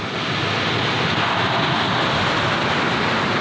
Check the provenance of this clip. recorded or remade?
recorded